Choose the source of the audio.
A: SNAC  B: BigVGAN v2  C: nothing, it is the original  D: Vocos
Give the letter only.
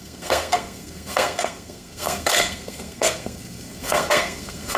A